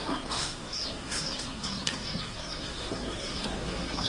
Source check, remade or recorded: remade